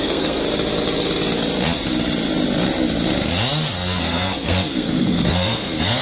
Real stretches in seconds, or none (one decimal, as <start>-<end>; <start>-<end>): 0.4-4.0